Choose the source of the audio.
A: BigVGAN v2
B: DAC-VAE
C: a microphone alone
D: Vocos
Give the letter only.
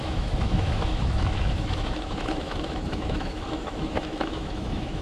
B